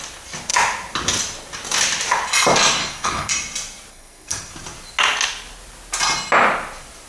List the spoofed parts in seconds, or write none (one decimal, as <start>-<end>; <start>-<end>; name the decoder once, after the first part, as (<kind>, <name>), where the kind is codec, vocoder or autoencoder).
2.8-3.3 (codec, SNAC); 3.9-4.5